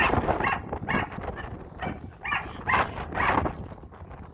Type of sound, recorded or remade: recorded